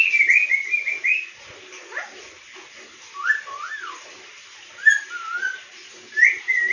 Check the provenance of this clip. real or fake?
real